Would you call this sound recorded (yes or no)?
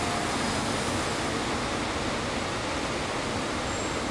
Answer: yes